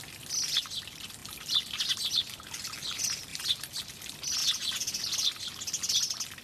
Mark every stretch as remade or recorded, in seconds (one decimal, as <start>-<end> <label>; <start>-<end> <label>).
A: 0.0-4.4 recorded; 4.4-5.0 remade; 5.0-6.4 recorded